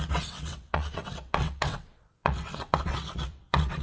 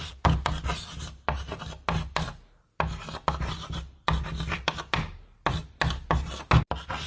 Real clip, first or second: second